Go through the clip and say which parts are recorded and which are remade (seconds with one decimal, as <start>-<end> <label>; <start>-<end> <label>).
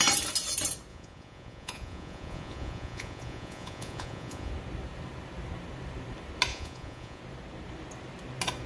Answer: 0.0-0.9 recorded; 0.9-4.5 remade; 4.5-6.5 recorded; 6.5-7.2 remade; 7.2-8.7 recorded